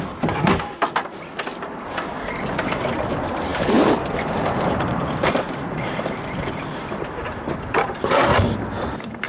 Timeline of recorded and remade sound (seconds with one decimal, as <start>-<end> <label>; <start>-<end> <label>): 0.0-3.5 recorded; 3.5-6.6 remade; 6.6-9.3 recorded